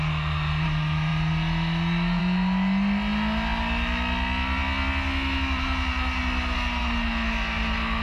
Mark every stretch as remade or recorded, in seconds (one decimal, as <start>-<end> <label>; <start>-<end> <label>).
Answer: 0.0-8.0 recorded